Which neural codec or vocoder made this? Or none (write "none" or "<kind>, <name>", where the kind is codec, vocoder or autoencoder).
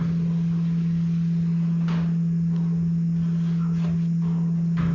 none